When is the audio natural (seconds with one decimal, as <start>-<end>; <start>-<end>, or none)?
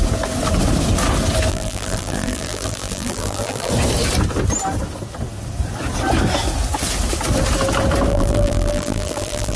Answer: 0.0-1.5; 3.7-8.1